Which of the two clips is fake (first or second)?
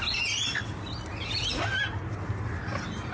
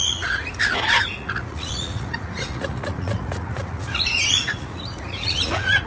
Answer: second